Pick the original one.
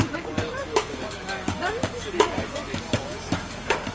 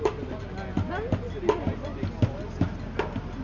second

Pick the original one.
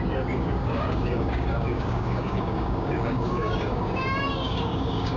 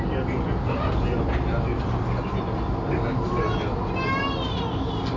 second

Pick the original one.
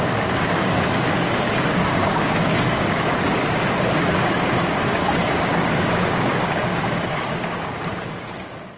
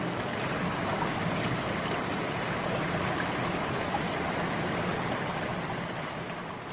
second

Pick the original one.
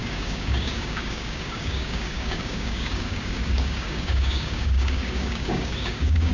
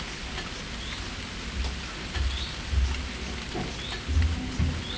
second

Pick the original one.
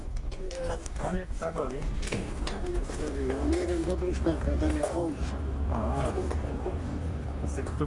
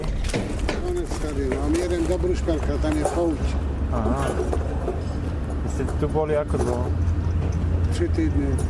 second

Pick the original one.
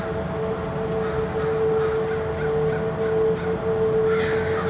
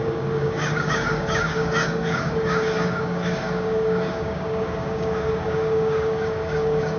first